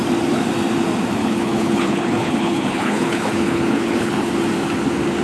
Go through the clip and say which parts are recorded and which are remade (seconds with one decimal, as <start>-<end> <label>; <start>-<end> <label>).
0.0-1.2 recorded; 1.2-4.3 remade; 4.3-5.2 recorded